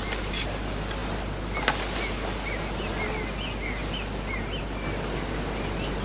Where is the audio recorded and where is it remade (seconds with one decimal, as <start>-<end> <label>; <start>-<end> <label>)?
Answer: 0.0-6.0 recorded